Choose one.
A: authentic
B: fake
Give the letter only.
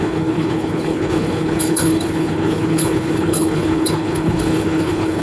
B